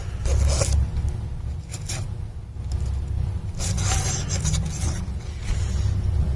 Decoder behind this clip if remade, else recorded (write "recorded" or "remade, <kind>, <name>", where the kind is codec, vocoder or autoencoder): recorded